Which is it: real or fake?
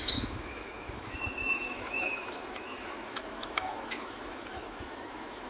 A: fake